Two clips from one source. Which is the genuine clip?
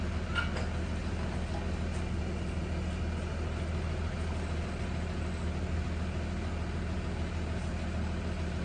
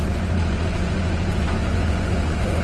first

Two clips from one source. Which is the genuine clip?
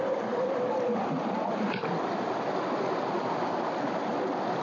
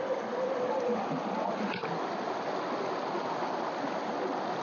second